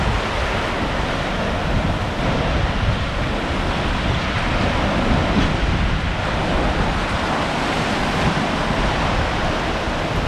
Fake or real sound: real